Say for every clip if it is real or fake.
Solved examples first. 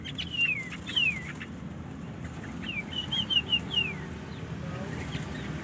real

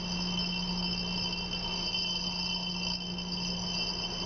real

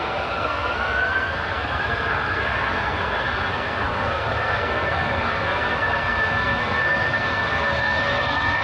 fake